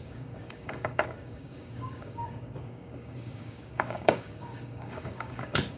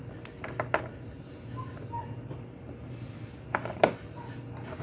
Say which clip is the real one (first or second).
second